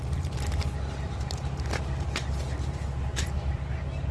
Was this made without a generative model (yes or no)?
yes